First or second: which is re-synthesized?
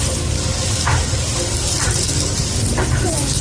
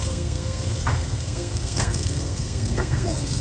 second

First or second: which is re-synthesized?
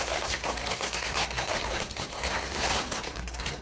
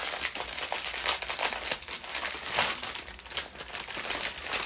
first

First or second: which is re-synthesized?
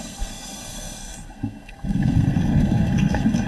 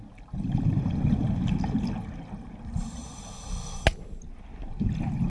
first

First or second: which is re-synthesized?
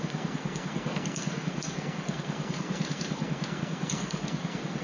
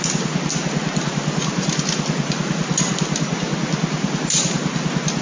first